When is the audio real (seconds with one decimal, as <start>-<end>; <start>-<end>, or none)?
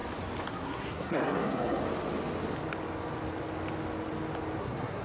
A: 0.0-0.5; 1.8-4.6